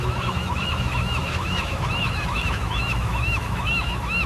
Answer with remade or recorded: remade